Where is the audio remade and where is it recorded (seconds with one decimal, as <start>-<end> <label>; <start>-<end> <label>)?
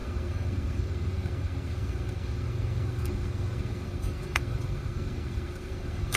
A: 0.0-6.2 remade